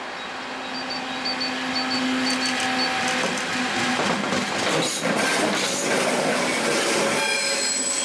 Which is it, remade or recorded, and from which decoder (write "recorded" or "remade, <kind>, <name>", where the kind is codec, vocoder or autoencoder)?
recorded